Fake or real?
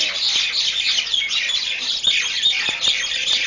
real